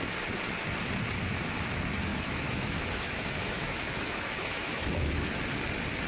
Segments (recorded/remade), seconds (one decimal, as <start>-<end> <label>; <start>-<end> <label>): 0.0-2.1 recorded; 2.1-5.4 remade; 5.4-6.1 recorded

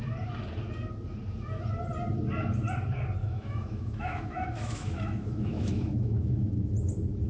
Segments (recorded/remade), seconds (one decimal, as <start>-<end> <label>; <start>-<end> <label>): 0.0-3.2 recorded; 3.2-6.7 remade; 6.7-7.3 recorded

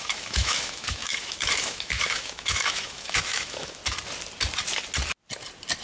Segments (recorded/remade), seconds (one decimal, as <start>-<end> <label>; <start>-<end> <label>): 0.0-3.8 remade; 3.8-5.8 recorded

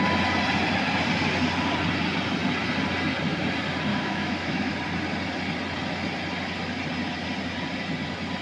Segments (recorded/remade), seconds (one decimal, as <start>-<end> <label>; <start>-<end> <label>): 0.0-3.9 recorded; 3.9-4.7 remade; 4.7-8.4 recorded

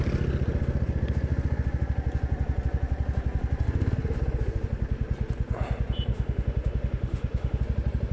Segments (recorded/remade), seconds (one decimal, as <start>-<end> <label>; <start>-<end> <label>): 0.0-6.1 recorded; 6.1-7.6 remade; 7.6-8.1 recorded

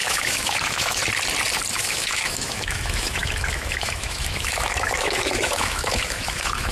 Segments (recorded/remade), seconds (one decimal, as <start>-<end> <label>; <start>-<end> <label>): 0.0-1.0 remade; 1.0-1.7 recorded; 1.7-6.7 remade

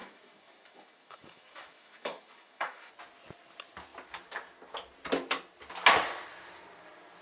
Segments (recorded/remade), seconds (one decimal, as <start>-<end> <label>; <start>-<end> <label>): 0.0-2.9 remade; 2.9-7.2 recorded